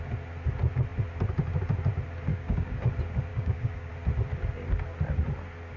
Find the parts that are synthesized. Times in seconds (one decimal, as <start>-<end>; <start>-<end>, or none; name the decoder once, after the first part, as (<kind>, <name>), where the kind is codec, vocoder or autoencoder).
2.3-2.8 (codec, DAC); 3.3-3.9